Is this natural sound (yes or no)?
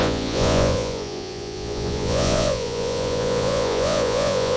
no